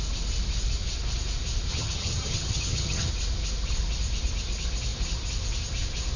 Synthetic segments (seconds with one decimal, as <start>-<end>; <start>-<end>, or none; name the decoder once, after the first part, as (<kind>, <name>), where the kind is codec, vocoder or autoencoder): 1.7-3.1 (vocoder, HiFi-GAN)